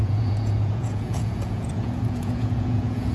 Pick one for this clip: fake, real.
fake